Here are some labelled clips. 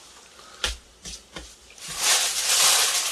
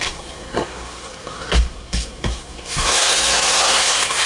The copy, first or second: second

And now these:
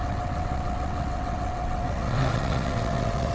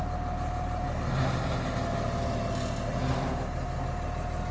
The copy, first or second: first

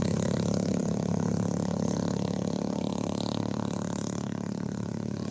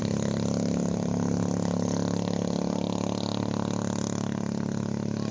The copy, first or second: first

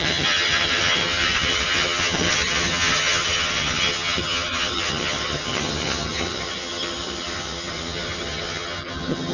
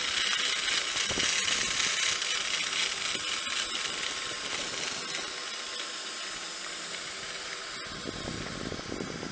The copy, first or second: first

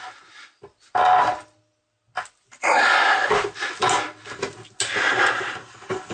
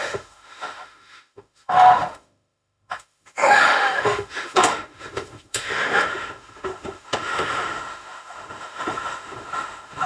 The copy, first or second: second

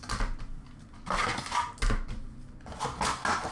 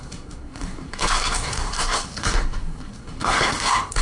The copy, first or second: second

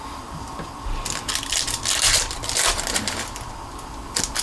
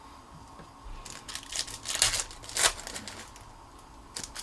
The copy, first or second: first